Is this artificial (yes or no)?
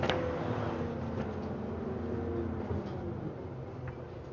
no